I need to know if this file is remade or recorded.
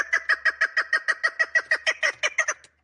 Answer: recorded